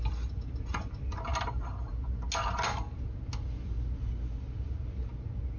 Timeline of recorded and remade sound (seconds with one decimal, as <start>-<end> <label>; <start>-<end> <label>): 0.0-5.6 recorded